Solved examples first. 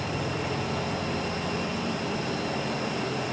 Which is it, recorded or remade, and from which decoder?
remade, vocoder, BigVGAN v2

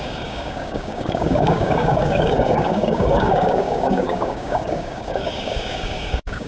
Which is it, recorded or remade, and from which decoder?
remade, codec, DAC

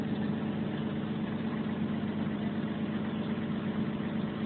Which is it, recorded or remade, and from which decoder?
recorded